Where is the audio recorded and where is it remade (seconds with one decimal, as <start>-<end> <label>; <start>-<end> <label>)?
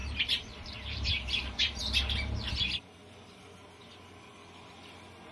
0.0-1.8 remade; 1.8-5.3 recorded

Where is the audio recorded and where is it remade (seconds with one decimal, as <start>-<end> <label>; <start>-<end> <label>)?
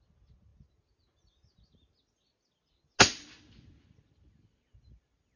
0.0-5.4 recorded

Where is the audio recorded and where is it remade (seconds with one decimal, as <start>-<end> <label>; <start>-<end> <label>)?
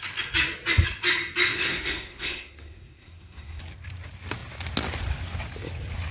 0.0-1.5 recorded; 1.5-3.6 remade; 3.6-6.1 recorded